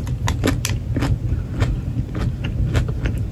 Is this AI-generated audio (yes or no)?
no